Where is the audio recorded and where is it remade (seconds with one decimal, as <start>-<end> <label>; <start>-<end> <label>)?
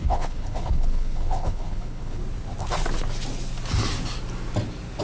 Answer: 0.0-2.2 remade; 2.2-5.0 recorded